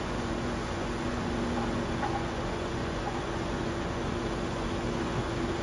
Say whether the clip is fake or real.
fake